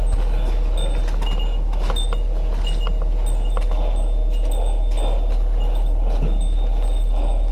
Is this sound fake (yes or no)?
no